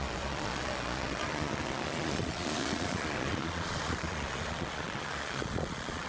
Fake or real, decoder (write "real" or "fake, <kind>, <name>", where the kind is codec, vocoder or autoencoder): fake, vocoder, Vocos